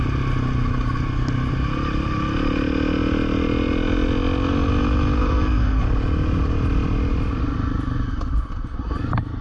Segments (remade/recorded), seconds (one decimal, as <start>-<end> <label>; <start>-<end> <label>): 0.0-5.2 recorded; 5.2-5.8 remade; 5.8-9.4 recorded